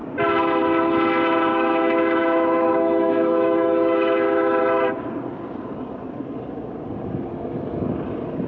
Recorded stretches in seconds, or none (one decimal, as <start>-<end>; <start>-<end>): 0.0-1.5; 4.6-8.5